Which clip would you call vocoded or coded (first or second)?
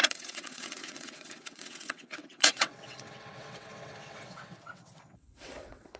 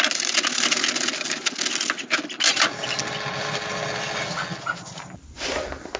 first